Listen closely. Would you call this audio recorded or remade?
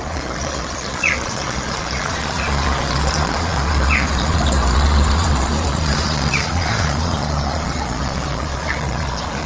remade